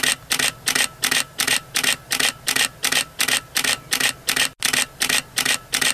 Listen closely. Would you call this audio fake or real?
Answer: real